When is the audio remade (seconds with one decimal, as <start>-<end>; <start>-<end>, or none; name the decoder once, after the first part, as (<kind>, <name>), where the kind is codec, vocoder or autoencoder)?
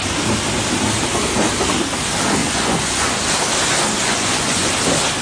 2.4-3.2 (vocoder, Vocos); 4.0-4.7